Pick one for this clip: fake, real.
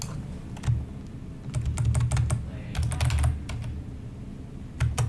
real